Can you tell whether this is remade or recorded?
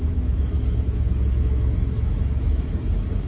remade